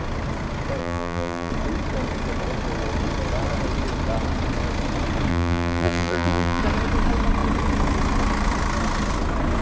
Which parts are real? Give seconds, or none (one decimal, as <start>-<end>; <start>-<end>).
0.0-0.8; 1.5-5.3; 6.6-9.6